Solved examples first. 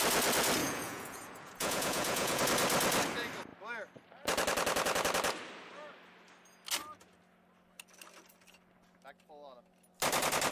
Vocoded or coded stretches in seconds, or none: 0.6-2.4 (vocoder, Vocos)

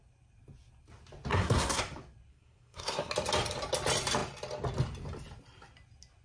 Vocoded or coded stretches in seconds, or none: 1.3-1.8 (codec, SNAC); 2.3-3.1

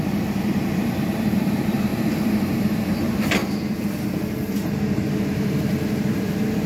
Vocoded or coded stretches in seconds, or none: 0.0-3.4 (vocoder, BigVGAN v2); 4.1-6.7